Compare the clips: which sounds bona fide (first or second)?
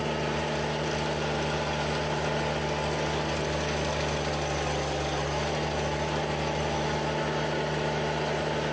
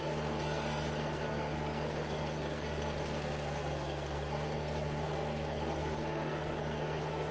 first